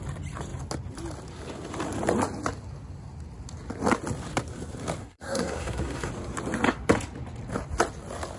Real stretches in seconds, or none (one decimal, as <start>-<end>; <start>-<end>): 0.0-5.0; 6.1-8.4